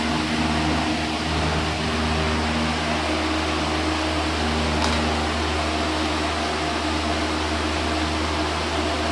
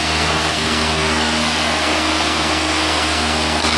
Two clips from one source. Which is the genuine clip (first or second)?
first